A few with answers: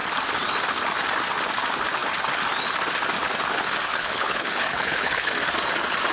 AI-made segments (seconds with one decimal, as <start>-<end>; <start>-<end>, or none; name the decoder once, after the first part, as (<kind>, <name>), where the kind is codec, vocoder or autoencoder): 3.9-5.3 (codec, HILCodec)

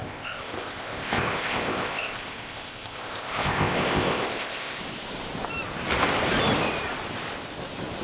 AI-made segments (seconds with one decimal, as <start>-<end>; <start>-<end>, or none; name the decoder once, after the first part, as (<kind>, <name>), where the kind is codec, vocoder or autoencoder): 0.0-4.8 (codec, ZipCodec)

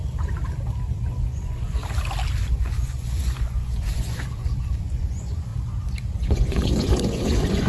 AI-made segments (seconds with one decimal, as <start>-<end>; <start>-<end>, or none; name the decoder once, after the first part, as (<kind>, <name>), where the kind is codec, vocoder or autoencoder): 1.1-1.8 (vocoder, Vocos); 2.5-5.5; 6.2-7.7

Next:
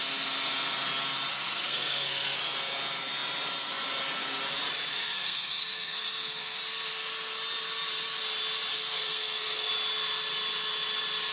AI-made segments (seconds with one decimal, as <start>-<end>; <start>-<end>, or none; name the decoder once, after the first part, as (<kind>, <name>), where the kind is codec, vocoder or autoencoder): 1.3-2.4 (codec, SNAC); 4.9-6.6; 8.7-9.7

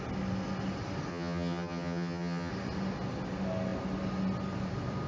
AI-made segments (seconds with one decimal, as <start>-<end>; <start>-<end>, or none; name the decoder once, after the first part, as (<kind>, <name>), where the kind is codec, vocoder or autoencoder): 1.1-2.5 (vocoder, HiFi-GAN)